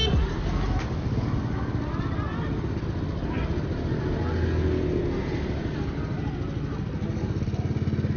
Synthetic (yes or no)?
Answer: no